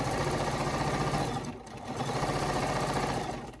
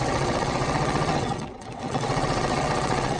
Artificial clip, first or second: second